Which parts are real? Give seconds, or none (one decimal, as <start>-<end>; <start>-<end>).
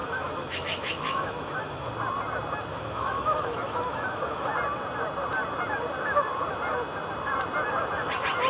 1.9-2.7; 4.5-8.5